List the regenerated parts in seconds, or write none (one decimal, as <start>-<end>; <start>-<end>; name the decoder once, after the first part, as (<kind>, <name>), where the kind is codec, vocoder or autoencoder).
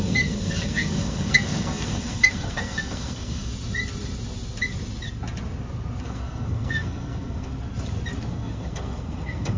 0.0-3.5 (codec, SNAC); 6.0-7.5; 8.3-9.6